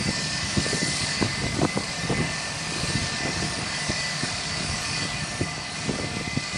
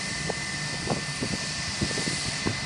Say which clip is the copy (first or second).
first